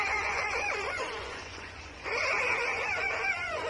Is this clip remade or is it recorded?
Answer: remade